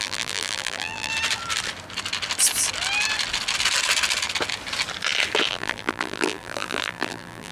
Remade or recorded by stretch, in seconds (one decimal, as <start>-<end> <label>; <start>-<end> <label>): 0.0-1.1 remade; 1.1-5.5 recorded; 5.5-7.5 remade